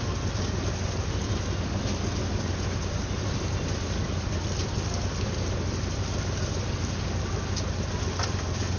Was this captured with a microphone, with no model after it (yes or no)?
yes